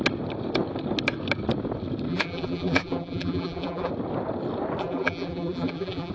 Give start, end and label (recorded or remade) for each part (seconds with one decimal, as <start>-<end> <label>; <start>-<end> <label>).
0.0-2.1 recorded; 2.1-3.9 remade; 3.9-4.8 recorded; 4.8-6.1 remade